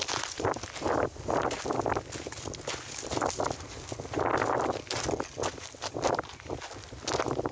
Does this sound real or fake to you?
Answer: real